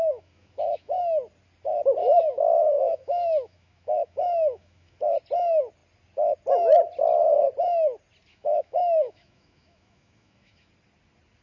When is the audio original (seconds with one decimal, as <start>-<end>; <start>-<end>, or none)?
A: 1.0-2.0; 5.0-8.3; 10.7-11.4